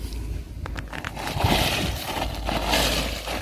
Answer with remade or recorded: recorded